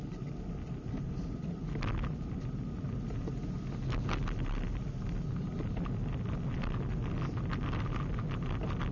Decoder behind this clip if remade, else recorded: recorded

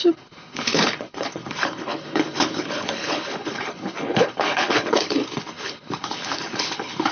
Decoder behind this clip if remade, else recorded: remade, codec, HILCodec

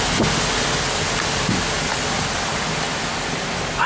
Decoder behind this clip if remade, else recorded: recorded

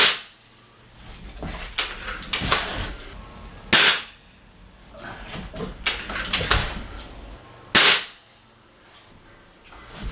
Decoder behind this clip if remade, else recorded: recorded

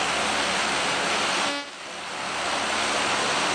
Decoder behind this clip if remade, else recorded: recorded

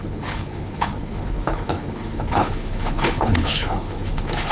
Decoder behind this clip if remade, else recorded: remade, codec, HILCodec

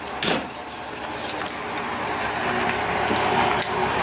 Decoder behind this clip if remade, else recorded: recorded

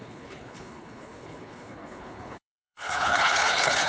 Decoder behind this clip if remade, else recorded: remade, codec, HILCodec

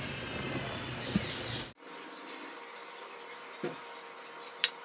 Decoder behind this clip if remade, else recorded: recorded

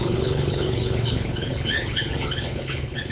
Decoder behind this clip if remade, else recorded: remade, codec, HILCodec